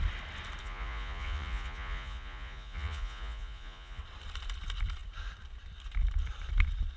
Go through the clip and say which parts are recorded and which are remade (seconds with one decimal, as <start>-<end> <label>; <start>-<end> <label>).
0.0-0.6 recorded; 0.6-4.0 remade; 4.0-7.0 recorded

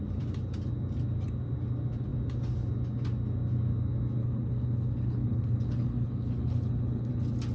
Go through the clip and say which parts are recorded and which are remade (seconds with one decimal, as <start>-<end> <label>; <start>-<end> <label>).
0.0-4.2 recorded; 4.2-7.1 remade; 7.1-7.5 recorded